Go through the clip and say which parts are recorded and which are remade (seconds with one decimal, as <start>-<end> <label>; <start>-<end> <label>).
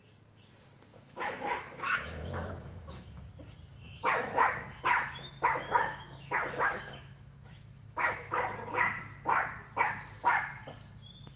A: 0.0-0.9 recorded; 0.9-3.2 remade; 3.2-3.8 recorded; 3.8-8.4 remade; 8.4-11.4 recorded